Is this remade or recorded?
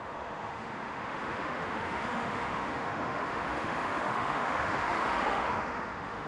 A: remade